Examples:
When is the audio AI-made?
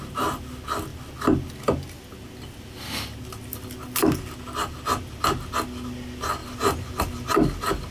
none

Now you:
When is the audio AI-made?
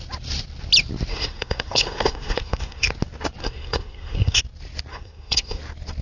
1.1-2.9; 3.4-4.4; 4.9-5.6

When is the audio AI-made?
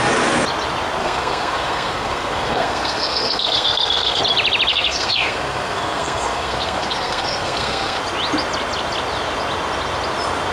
1.0-4.2; 4.7-8.0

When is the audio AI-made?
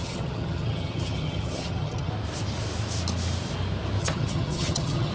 0.0-2.1; 4.0-5.1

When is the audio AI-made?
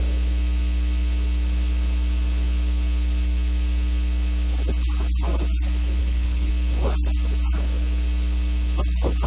6.0-6.5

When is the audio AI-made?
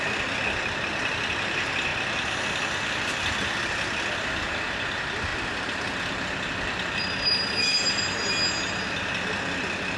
none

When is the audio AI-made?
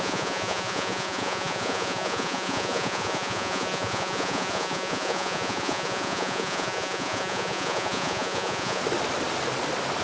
0.0-8.8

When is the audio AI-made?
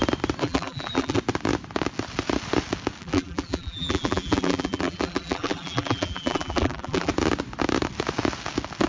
0.4-1.2; 3.0-7.1